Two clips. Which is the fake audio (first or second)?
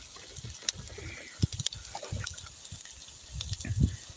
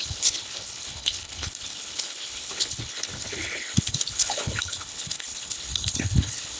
second